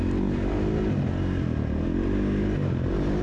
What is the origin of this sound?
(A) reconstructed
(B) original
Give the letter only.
B